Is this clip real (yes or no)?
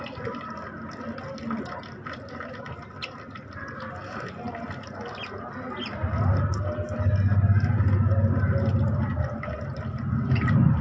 yes